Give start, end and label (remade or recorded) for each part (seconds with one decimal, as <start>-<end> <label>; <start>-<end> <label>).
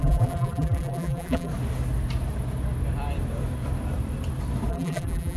0.0-1.5 remade; 1.5-4.7 recorded; 4.7-5.4 remade